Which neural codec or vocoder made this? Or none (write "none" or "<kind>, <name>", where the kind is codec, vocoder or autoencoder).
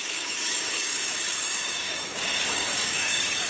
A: codec, DAC